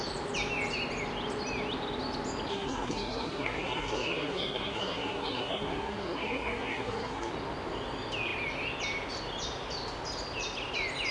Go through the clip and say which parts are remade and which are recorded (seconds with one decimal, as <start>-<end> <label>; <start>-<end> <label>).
0.0-2.5 recorded; 2.5-7.3 remade; 7.3-11.1 recorded